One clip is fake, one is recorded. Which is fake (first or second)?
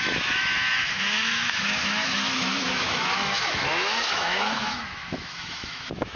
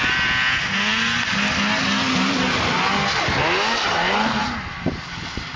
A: first